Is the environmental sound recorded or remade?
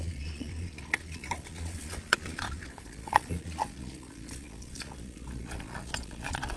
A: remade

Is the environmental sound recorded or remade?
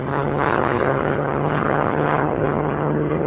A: remade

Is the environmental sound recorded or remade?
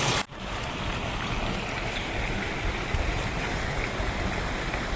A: recorded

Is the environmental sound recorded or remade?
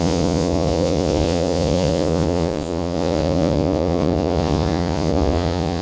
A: remade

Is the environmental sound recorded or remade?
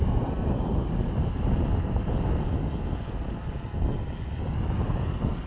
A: recorded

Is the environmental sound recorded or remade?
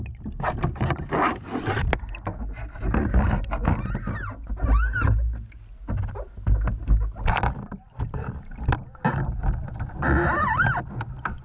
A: recorded